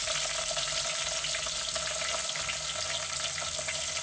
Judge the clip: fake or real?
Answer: real